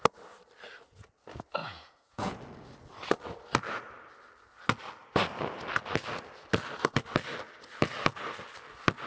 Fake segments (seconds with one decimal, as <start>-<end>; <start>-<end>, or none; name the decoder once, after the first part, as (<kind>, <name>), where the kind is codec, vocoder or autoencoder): 1.6-2.4 (vocoder, Vocos)